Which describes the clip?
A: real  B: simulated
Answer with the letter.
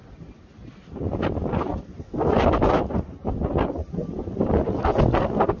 A